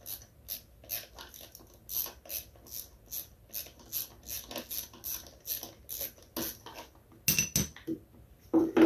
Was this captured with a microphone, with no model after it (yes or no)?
yes